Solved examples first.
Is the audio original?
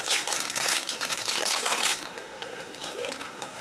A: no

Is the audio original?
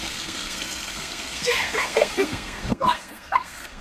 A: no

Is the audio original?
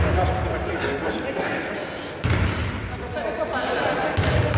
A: yes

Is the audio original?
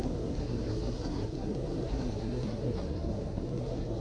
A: no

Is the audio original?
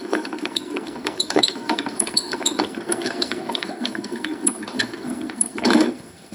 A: no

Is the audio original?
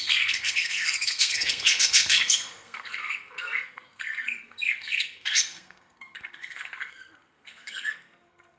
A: no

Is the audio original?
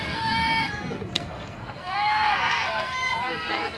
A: no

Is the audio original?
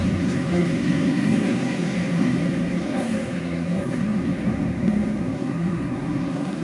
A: no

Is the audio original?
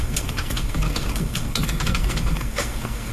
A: no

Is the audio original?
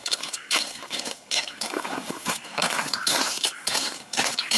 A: no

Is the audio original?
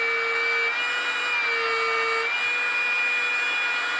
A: yes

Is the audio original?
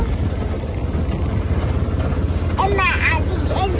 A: yes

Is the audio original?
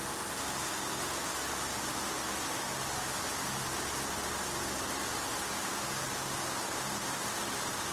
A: yes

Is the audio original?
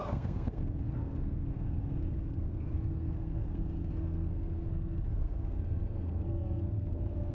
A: no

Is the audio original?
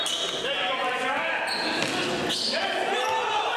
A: yes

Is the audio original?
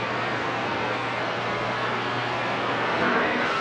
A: no